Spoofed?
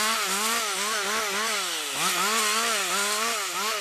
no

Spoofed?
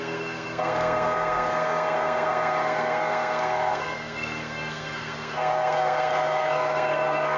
yes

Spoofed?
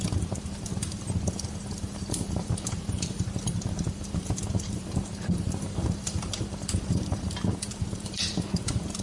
yes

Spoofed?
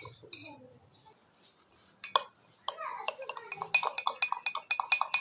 no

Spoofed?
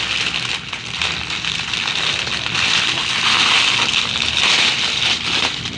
no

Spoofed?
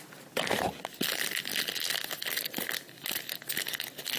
no